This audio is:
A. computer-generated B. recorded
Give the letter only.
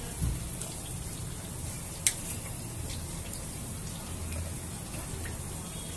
B